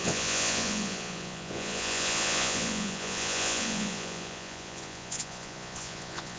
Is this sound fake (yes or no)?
yes